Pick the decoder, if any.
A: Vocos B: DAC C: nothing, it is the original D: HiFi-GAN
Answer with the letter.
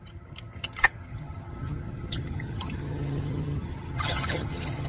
D